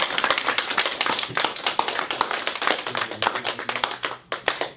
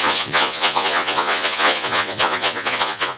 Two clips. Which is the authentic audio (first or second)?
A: first